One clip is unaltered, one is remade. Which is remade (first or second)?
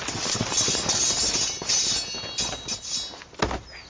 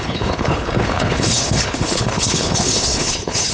second